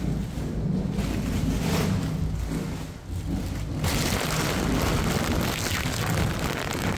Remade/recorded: recorded